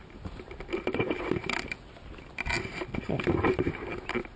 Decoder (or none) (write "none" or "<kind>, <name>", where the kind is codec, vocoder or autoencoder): none